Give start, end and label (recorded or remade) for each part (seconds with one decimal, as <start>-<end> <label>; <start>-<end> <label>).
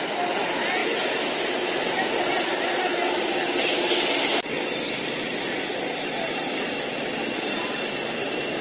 0.0-8.6 recorded